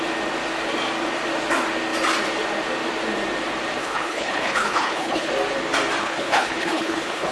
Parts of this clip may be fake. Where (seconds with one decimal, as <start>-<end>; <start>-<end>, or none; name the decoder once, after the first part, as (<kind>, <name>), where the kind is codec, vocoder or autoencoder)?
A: 3.8-5.3 (codec, HILCodec); 6.0-7.3